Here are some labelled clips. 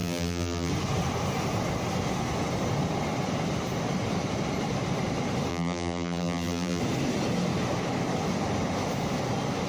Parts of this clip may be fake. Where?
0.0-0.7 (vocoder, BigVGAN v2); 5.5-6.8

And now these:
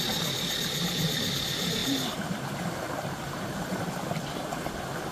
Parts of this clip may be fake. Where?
none